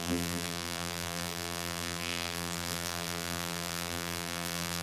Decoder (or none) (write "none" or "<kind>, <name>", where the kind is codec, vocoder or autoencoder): vocoder, BigVGAN v2